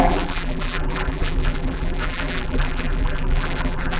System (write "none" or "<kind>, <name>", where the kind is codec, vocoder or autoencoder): vocoder, BigVGAN v2